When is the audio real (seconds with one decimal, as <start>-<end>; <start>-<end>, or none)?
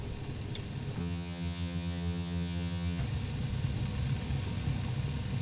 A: 0.0-1.0; 3.0-5.4